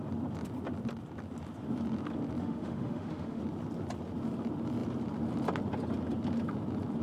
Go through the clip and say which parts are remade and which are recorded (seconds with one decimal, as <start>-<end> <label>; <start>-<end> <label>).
0.0-2.4 recorded; 2.4-3.4 remade; 3.4-7.0 recorded